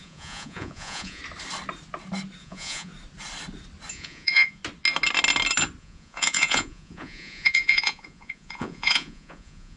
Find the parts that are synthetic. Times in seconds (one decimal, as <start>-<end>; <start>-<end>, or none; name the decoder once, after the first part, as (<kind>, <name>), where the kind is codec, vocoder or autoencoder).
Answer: 0.0-1.2 (vocoder, Vocos); 2.4-2.9; 3.9-4.6; 5.8-9.8